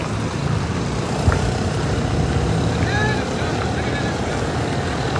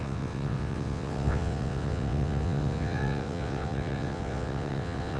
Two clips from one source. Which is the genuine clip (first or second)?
first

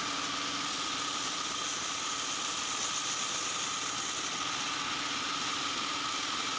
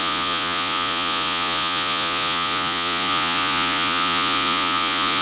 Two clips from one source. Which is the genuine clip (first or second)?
first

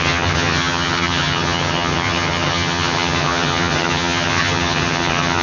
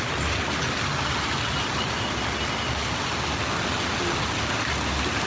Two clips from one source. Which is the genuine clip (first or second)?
second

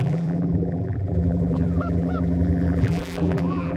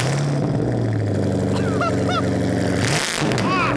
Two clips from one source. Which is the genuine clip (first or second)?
second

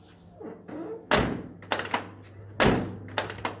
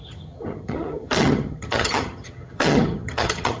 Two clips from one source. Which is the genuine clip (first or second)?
first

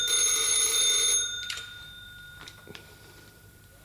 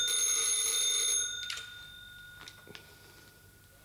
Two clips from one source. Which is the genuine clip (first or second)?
second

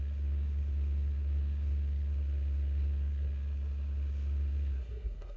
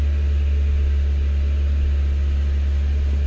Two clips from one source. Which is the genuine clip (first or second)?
second